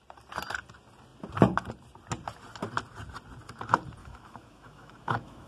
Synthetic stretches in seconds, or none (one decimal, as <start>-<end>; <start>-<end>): 4.0-5.5